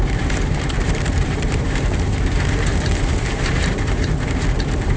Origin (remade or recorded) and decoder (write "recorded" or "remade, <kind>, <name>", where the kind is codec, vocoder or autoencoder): remade, vocoder, BigVGAN v2